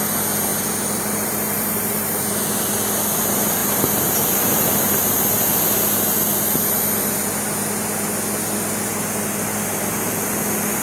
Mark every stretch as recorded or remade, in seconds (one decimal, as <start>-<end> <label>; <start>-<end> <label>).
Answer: 0.0-0.5 recorded; 0.5-2.3 remade; 2.3-3.6 recorded; 3.6-4.9 remade; 4.9-10.8 recorded

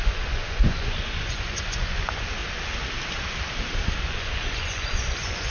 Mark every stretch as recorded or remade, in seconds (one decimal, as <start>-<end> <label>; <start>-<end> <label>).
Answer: 0.0-2.4 remade; 2.4-4.0 recorded; 4.0-5.5 remade

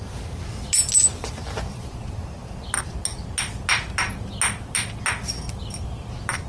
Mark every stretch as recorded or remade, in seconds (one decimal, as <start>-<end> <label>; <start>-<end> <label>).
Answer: 0.0-6.5 recorded

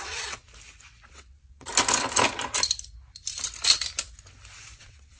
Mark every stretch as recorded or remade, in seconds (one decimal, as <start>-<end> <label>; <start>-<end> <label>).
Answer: 0.0-0.4 remade; 0.4-1.1 recorded; 1.1-1.7 remade; 1.7-4.8 recorded; 4.8-5.2 remade